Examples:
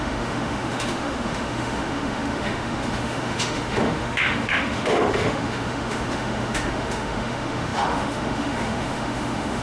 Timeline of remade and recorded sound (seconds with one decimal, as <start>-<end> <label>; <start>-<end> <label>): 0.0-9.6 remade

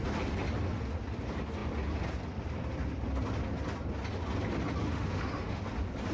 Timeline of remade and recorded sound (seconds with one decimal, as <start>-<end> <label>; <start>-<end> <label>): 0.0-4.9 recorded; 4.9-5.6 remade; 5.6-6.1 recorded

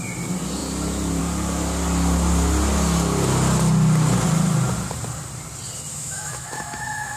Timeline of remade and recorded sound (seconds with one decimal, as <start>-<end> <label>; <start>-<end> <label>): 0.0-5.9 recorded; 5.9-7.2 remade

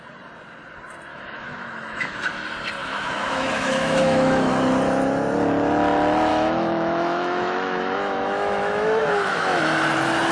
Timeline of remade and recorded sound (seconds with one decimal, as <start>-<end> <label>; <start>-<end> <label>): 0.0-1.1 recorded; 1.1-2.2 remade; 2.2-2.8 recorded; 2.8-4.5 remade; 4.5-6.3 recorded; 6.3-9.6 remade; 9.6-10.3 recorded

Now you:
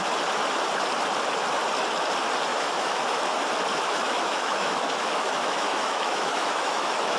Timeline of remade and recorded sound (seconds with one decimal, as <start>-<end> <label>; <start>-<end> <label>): 0.0-2.5 recorded; 2.5-3.2 remade; 3.2-3.7 recorded; 3.7-7.2 remade